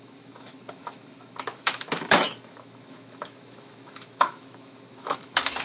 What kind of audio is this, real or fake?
fake